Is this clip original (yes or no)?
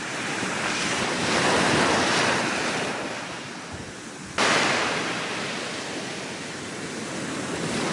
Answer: yes